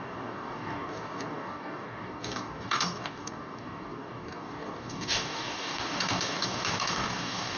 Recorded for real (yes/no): no